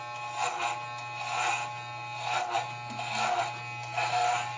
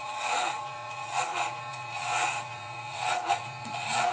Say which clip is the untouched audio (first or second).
first